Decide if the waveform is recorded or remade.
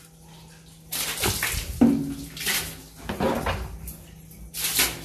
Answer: recorded